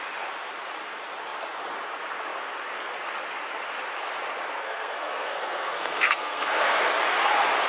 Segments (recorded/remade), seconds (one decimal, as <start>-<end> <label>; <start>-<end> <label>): 0.0-4.6 recorded; 4.6-6.8 remade; 6.8-7.7 recorded